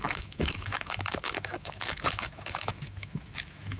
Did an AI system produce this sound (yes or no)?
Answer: yes